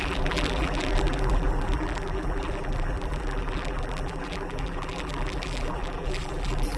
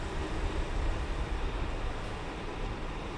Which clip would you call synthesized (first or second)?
first